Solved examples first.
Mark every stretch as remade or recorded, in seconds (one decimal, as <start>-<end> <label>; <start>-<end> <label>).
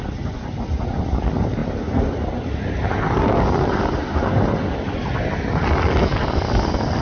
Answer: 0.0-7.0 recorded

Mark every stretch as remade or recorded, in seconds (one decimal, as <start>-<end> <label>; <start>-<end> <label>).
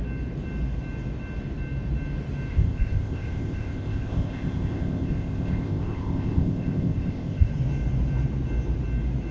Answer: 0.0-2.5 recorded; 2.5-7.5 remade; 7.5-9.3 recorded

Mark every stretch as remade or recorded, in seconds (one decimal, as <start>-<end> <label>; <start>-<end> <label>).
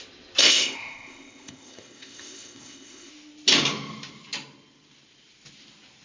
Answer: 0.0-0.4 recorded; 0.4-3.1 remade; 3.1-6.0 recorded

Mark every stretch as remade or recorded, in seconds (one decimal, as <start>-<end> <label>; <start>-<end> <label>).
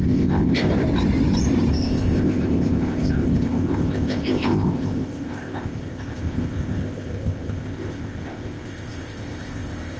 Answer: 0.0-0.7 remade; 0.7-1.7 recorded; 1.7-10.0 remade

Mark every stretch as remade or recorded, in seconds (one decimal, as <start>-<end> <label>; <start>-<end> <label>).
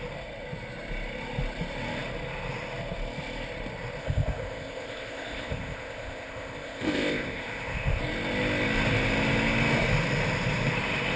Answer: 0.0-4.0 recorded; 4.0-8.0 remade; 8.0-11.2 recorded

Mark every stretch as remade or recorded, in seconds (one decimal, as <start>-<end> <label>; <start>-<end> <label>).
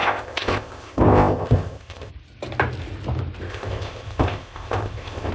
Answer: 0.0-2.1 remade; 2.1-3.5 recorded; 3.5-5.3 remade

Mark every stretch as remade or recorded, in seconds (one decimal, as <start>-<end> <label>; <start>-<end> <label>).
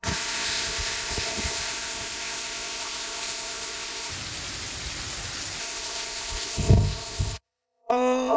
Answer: 0.0-4.1 remade; 4.1-5.6 recorded; 5.6-8.4 remade